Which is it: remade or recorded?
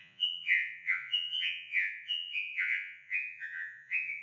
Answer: remade